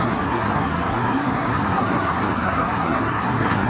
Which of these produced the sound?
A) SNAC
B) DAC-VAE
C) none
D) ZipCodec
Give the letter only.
A